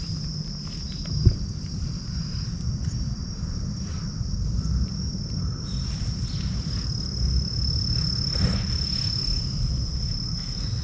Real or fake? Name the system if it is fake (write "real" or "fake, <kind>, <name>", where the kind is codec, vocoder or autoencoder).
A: real